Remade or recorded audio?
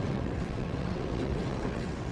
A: remade